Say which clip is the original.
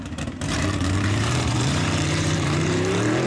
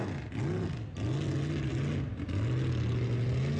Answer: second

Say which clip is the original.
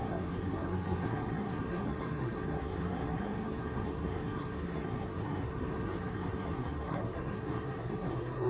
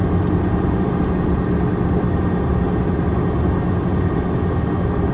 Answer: second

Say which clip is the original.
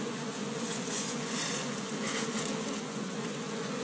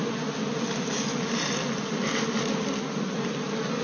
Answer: second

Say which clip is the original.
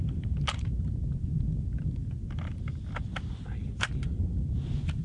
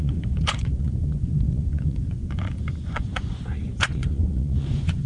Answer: first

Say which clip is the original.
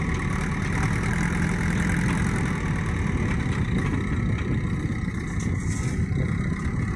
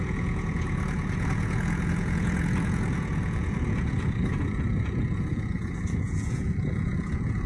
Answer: first